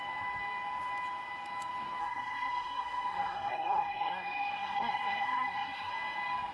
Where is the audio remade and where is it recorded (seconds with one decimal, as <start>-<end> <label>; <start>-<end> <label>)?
0.0-2.0 recorded; 2.0-5.9 remade; 5.9-6.5 recorded